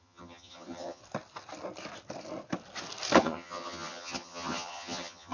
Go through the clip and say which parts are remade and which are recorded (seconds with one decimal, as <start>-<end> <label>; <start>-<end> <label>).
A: 0.0-1.0 remade; 1.0-3.2 recorded; 3.2-5.3 remade